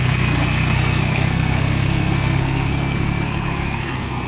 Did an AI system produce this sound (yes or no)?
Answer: yes